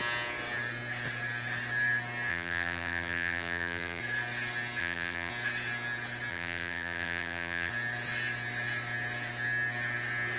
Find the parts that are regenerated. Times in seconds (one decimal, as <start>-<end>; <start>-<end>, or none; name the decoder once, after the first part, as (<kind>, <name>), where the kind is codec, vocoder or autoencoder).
2.3-4.0 (vocoder, BigVGAN v2); 4.8-5.3; 6.3-7.7